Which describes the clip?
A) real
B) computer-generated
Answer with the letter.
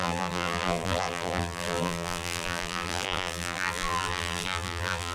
B